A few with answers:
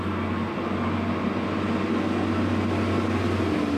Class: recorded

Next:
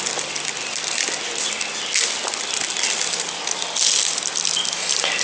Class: recorded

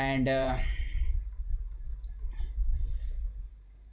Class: remade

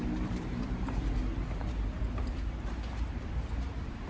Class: remade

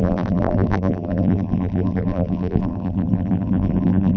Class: remade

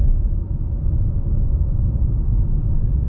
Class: recorded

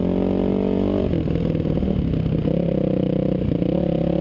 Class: recorded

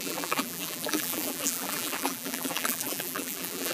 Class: remade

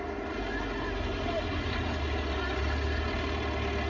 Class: recorded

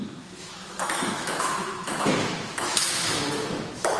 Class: remade